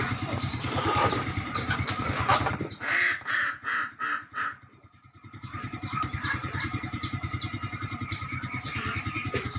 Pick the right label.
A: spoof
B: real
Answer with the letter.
A